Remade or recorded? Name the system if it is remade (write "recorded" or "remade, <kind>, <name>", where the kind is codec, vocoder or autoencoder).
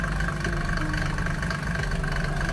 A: recorded